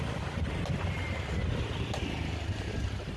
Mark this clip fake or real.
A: real